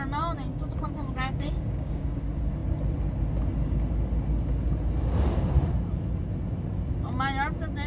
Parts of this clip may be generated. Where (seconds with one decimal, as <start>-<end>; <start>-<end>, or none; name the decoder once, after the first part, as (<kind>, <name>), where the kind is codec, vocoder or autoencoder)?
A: 0.5-2.2 (codec, DAC)